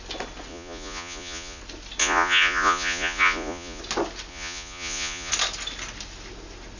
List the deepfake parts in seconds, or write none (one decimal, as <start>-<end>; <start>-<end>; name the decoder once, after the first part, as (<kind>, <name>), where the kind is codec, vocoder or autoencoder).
0.5-1.6 (vocoder, Vocos); 2.0-3.8; 4.3-5.3